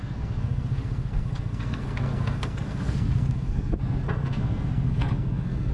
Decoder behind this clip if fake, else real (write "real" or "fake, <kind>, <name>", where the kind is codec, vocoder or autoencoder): fake, codec, SNAC